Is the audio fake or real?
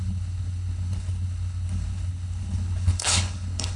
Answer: fake